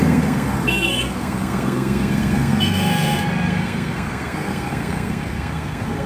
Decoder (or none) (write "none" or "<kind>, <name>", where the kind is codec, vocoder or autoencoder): codec, SNAC